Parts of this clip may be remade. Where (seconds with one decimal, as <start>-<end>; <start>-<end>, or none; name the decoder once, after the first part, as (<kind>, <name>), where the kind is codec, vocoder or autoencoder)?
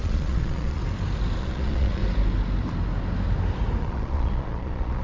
0.0-0.8 (vocoder, Vocos); 1.4-2.0; 3.8-5.0